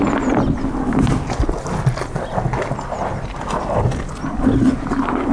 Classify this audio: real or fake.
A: real